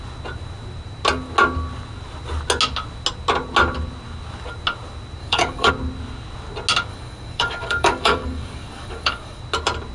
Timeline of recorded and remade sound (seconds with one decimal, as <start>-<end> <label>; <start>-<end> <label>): 0.0-5.2 recorded; 5.2-5.7 remade; 5.7-6.9 recorded; 6.9-9.4 remade; 9.4-9.9 recorded